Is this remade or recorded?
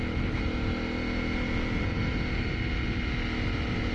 recorded